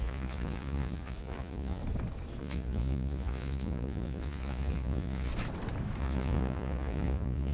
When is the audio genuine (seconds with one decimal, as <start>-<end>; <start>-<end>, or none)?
1.8-2.4; 5.3-6.0